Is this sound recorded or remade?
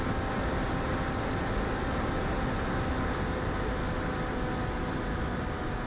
recorded